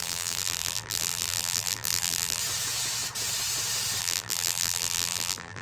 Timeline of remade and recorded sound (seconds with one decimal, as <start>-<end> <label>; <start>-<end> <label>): 0.0-2.4 remade; 2.4-4.0 recorded; 4.0-5.6 remade